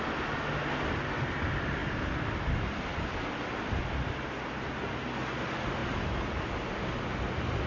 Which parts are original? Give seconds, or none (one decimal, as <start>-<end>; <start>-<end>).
0.0-7.7